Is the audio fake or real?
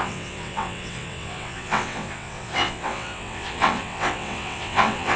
fake